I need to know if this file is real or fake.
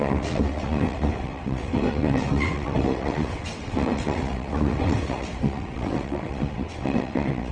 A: fake